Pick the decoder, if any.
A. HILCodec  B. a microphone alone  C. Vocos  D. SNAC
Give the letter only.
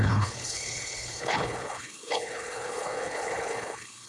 A